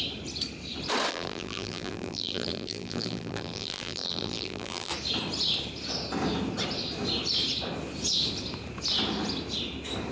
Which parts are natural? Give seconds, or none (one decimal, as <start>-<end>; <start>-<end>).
0.0-1.1; 4.9-10.1